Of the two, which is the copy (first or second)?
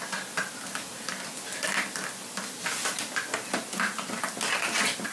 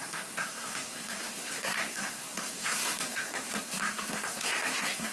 second